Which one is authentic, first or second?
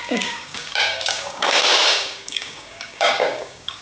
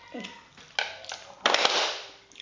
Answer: second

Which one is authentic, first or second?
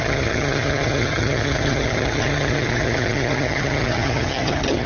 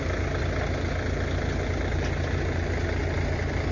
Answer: second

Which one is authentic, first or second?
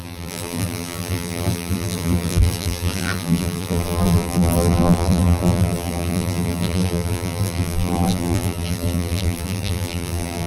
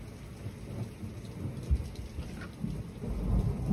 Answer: second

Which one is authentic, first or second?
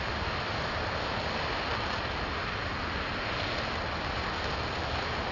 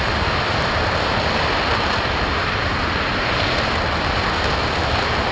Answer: first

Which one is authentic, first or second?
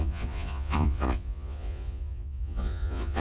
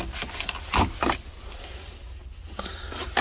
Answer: second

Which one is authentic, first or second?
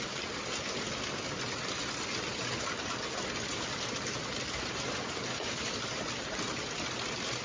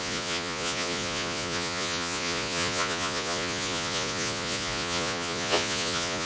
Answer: first